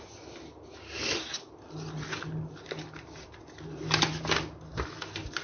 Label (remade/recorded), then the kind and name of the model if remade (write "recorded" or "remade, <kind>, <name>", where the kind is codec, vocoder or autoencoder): recorded